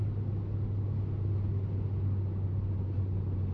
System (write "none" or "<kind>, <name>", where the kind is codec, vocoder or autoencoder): none